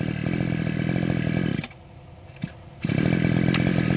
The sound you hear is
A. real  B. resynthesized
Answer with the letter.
A